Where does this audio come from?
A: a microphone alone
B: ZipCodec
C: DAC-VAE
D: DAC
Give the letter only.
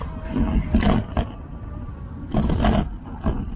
A